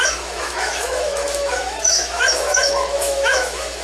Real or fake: fake